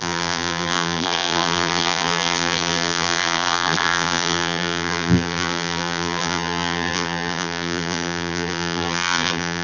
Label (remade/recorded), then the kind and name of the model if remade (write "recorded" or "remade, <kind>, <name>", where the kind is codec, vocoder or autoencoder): remade, vocoder, BigVGAN v2